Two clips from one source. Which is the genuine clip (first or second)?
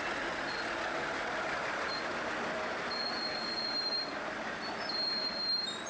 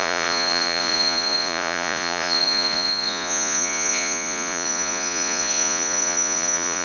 first